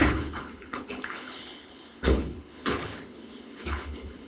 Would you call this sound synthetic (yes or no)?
yes